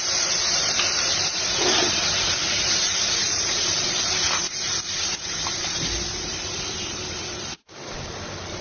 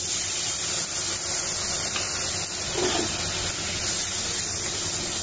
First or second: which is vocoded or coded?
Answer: first